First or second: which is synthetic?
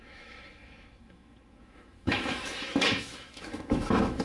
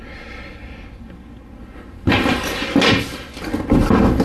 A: first